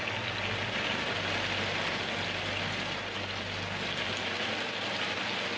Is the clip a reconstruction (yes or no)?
no